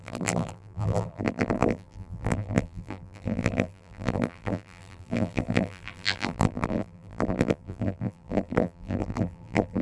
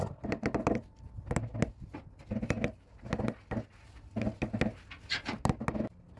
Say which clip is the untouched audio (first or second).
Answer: second